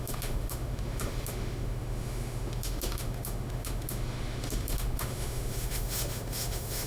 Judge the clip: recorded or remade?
remade